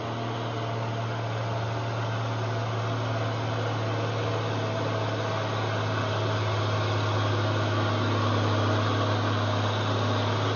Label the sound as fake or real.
real